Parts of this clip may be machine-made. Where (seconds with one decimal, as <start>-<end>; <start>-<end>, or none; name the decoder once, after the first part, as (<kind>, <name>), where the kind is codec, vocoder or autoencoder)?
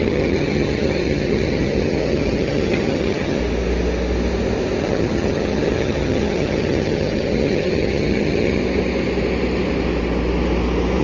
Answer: 0.0-3.4 (vocoder, HiFi-GAN); 4.8-8.6